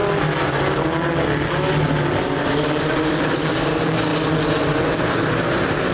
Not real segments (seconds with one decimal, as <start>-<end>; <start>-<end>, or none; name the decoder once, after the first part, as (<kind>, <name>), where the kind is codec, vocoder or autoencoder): 2.2-4.1 (vocoder, BigVGAN v2); 4.8-5.9